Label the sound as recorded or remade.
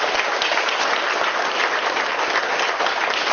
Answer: recorded